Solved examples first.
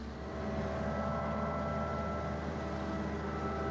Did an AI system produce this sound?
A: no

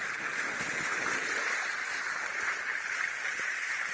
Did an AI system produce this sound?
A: no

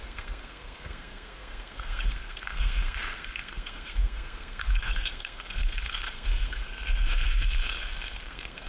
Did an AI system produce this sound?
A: yes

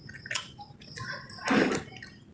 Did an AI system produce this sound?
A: no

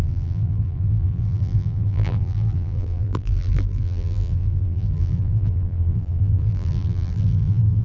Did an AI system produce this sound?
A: yes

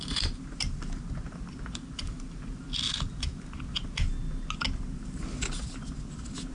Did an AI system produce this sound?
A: no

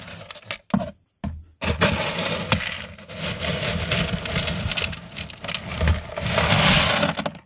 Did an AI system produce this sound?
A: no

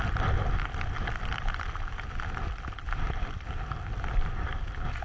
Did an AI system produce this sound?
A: no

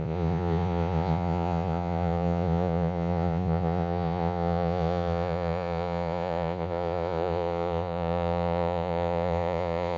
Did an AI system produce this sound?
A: yes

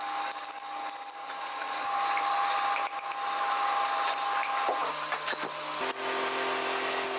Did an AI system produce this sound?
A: no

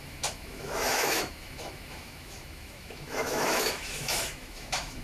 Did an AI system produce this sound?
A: yes